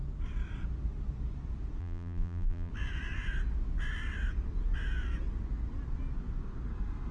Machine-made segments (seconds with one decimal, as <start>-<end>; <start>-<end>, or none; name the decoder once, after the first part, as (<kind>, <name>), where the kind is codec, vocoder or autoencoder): 1.8-2.7 (vocoder, BigVGAN v2)